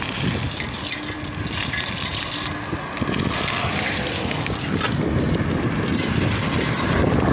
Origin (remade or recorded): recorded